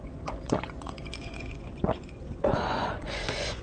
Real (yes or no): no